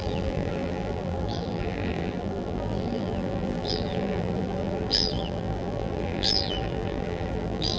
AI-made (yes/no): yes